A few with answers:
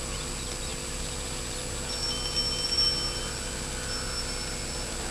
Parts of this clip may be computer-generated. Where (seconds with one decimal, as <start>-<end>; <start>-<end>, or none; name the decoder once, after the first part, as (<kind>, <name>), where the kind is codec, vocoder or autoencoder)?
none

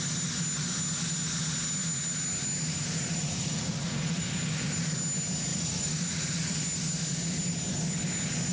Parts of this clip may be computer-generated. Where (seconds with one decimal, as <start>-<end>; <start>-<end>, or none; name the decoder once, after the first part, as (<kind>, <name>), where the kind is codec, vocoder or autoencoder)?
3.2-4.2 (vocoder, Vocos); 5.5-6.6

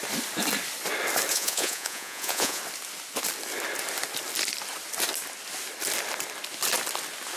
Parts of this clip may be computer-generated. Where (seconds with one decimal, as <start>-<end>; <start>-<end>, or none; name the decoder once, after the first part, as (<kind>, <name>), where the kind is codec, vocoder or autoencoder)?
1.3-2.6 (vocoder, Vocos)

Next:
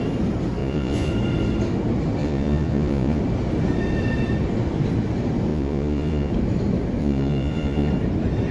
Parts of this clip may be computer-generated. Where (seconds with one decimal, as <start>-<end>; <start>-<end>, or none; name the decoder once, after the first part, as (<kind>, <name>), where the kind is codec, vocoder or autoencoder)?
0.6-1.1 (vocoder, Vocos); 2.2-3.2; 5.5-6.3; 7.0-7.9